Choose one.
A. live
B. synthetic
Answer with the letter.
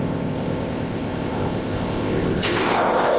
B